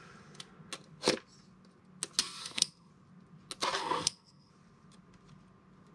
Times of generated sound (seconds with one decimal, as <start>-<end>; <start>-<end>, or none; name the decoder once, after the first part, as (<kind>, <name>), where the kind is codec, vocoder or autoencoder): 2.2-2.9 (codec, SNAC); 3.8-4.5